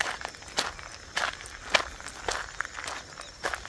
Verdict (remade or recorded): recorded